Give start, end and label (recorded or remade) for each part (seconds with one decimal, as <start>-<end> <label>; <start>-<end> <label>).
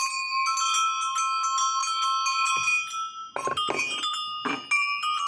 0.0-5.3 recorded